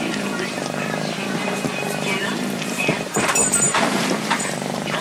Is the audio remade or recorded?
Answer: remade